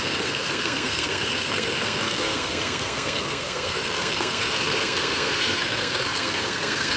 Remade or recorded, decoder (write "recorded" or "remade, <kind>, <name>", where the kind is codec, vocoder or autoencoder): remade, codec, SNAC